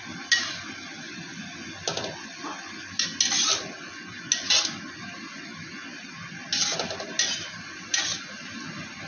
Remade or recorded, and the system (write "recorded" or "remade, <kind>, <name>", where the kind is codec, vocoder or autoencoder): recorded